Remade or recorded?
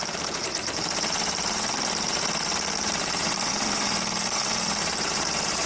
remade